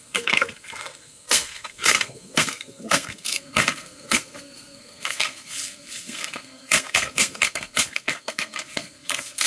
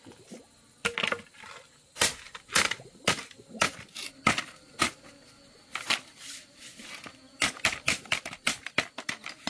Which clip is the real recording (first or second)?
second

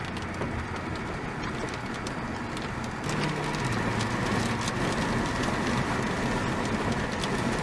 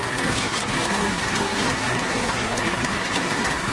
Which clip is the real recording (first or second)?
first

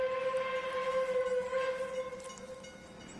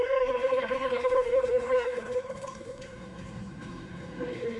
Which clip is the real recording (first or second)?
first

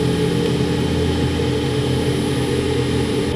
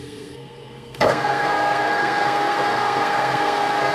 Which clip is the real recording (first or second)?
first